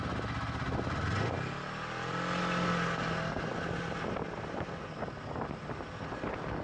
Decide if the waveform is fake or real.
real